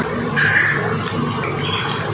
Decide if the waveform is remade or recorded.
recorded